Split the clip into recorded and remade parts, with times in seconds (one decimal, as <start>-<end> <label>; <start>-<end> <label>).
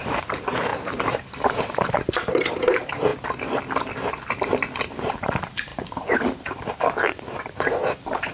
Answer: 0.0-3.1 remade; 3.1-4.5 recorded; 4.5-8.3 remade